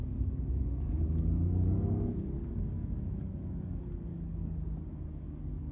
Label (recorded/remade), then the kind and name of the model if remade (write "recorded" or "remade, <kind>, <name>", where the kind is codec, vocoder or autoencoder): remade, codec, DAC